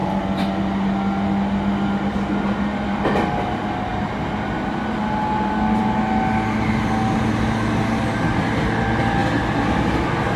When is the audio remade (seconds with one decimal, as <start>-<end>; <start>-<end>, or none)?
none